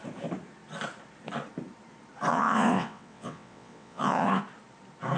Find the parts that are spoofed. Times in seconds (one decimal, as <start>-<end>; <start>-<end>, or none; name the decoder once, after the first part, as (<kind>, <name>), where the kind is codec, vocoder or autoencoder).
2.3-4.4 (vocoder, WaveNeXt)